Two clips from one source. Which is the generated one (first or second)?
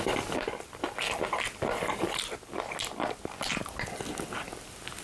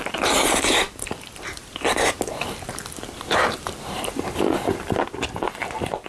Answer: second